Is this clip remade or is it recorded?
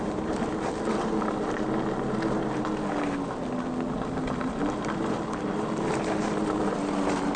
recorded